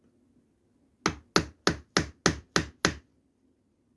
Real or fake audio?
real